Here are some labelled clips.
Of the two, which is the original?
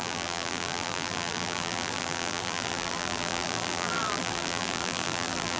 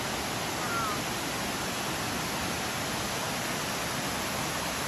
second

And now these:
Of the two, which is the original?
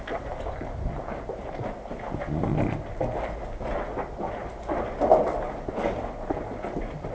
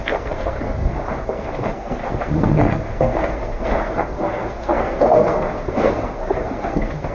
first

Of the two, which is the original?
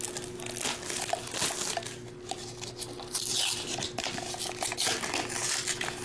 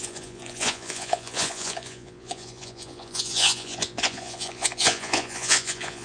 first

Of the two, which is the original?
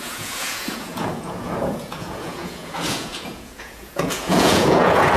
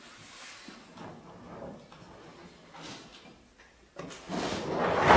second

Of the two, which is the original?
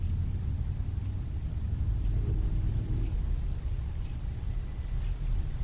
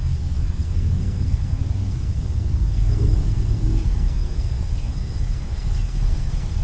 first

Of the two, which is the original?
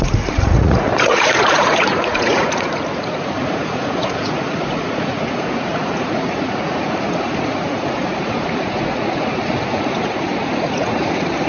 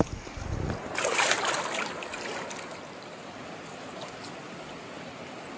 second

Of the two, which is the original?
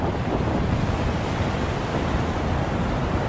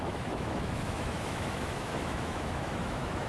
first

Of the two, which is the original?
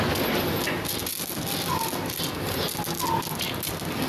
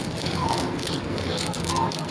first